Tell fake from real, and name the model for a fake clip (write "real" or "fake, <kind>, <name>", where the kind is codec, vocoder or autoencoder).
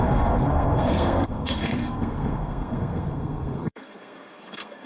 fake, codec, SNAC